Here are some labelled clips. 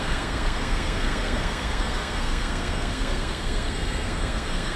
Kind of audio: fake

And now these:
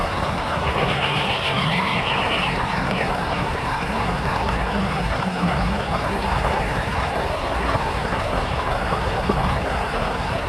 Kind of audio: fake